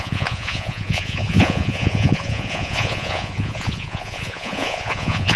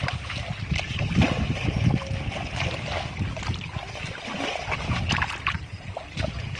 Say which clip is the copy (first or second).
first